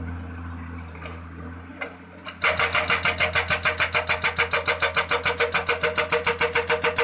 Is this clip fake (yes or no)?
no